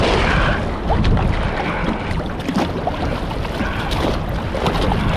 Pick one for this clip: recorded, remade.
recorded